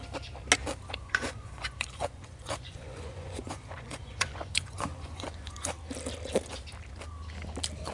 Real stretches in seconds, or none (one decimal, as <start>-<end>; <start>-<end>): 0.0-1.0; 5.7-7.9